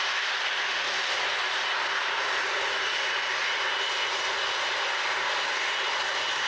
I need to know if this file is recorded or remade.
recorded